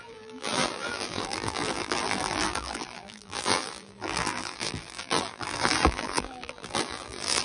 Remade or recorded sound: remade